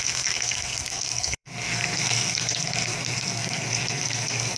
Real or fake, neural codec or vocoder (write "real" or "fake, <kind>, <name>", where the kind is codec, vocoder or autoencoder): fake, codec, SNAC